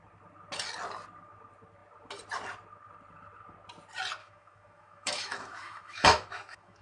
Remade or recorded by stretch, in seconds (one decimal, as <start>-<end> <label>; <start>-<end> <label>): 0.0-4.2 recorded; 4.2-6.8 remade